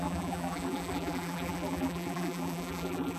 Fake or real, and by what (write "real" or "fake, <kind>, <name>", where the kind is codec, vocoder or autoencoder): fake, vocoder, BigVGAN v2